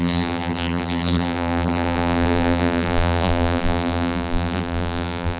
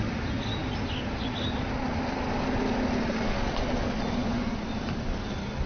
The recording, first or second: second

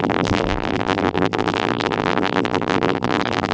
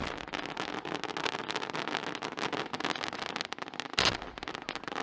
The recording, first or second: second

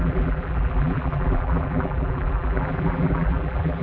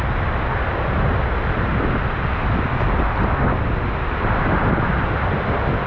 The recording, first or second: second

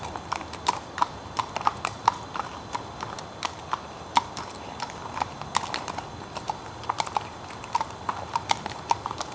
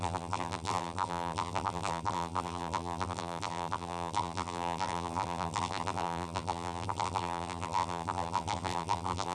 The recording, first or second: first